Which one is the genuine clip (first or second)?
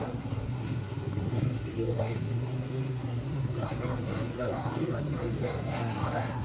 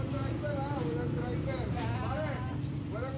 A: second